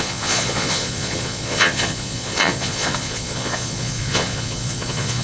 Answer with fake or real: fake